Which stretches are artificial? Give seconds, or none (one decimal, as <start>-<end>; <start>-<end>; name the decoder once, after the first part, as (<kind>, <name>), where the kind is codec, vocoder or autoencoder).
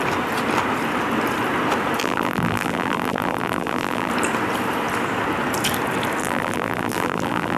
2.0-4.1 (vocoder, BigVGAN v2); 6.2-7.6